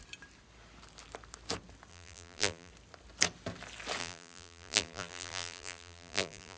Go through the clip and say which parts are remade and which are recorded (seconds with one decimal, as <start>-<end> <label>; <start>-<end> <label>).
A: 0.0-1.9 recorded; 1.9-2.7 remade; 2.7-4.0 recorded; 4.0-6.6 remade